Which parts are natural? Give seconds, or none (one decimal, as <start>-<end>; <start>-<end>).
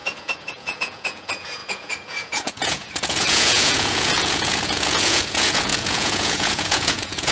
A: none